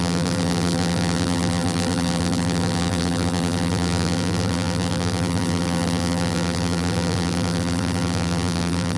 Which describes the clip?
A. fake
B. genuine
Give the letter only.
A